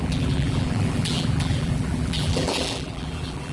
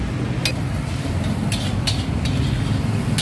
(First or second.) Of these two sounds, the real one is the second